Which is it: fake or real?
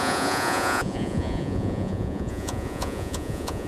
fake